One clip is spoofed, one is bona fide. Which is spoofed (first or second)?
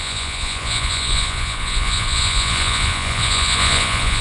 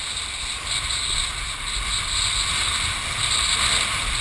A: first